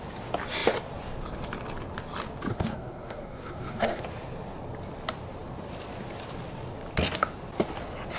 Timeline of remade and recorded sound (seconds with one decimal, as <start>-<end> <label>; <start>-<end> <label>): 0.0-2.5 recorded; 2.5-4.0 remade; 4.0-8.2 recorded